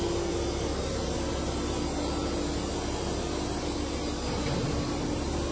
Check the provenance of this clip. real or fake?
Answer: real